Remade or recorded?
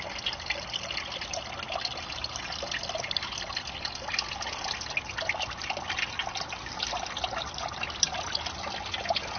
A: recorded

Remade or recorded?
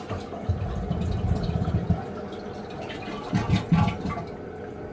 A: recorded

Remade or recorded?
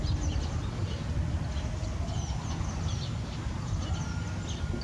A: recorded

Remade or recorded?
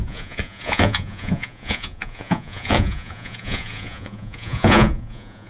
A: remade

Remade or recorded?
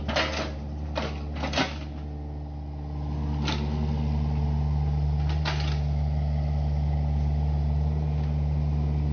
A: recorded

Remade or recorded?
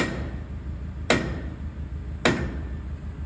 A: recorded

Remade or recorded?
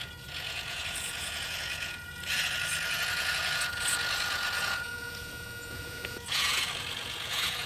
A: remade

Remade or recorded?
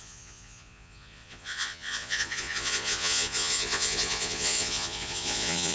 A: remade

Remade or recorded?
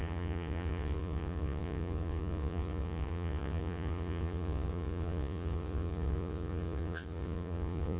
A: remade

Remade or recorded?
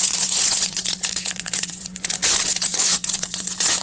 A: remade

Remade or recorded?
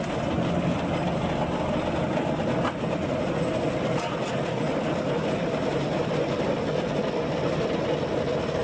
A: recorded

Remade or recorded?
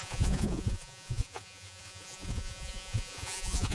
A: remade